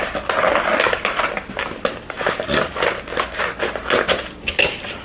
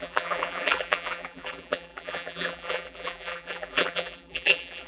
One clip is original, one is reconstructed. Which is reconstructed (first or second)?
second